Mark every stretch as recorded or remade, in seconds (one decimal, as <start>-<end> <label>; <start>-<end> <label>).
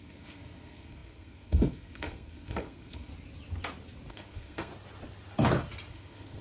0.0-3.1 remade; 3.1-4.1 recorded; 4.1-4.7 remade; 4.7-5.9 recorded; 5.9-6.4 remade